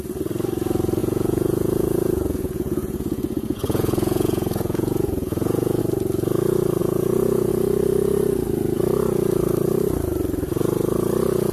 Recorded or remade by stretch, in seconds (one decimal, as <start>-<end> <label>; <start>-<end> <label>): 0.0-1.0 recorded; 1.0-5.8 remade; 5.8-6.8 recorded; 6.8-7.5 remade; 7.5-11.5 recorded